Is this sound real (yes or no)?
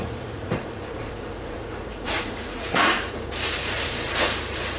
no